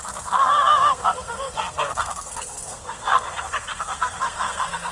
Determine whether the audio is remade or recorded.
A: remade